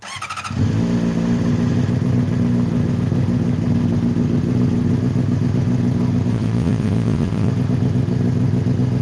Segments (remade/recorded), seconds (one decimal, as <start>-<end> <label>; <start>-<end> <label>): 0.0-6.3 recorded; 6.3-7.5 remade; 7.5-9.0 recorded